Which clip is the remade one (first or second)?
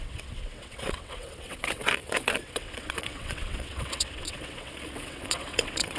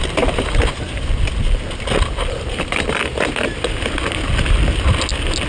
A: first